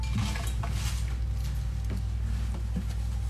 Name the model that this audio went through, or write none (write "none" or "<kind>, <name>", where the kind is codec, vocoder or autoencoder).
none